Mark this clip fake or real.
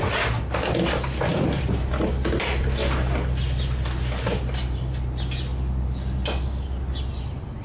real